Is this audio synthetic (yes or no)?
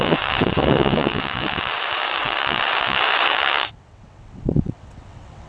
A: yes